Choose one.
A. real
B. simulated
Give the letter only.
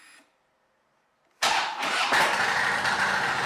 A